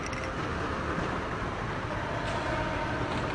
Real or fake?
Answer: real